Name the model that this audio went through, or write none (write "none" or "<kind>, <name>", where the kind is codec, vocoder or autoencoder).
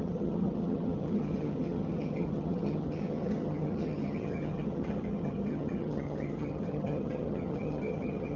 vocoder, HiFi-GAN